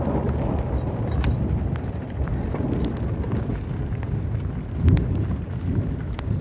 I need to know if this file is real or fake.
real